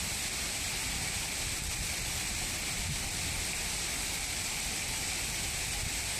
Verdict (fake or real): fake